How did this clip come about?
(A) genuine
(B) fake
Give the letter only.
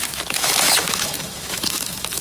B